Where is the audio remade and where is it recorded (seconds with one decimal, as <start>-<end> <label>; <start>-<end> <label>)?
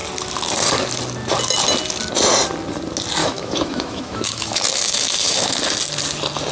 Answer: 0.0-3.2 recorded; 3.2-5.6 remade; 5.6-6.5 recorded